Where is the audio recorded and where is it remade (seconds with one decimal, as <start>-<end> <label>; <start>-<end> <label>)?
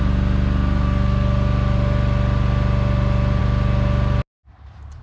0.0-5.0 recorded